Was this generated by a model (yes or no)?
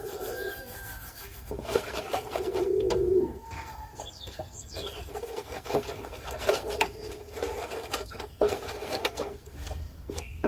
yes